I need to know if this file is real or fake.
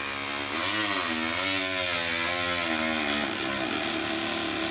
real